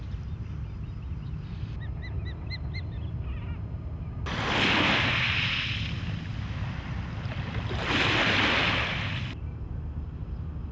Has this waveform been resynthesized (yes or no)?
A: no